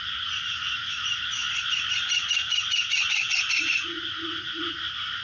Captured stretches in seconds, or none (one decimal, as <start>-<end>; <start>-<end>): none